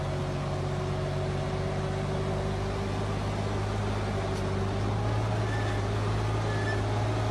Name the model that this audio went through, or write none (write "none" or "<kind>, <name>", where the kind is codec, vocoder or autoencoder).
none